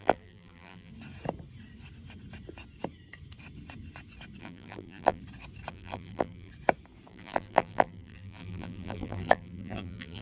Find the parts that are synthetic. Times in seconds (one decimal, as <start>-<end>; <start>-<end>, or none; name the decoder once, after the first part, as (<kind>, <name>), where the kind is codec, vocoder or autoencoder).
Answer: 0.0-0.9 (vocoder, BigVGAN v2); 4.4-5.2; 5.7-6.5; 7.1-10.2